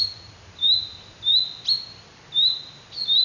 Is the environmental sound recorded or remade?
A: recorded